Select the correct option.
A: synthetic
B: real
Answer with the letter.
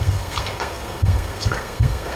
A